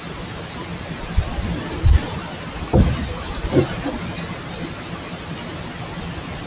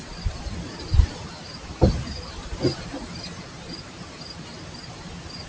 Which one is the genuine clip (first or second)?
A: first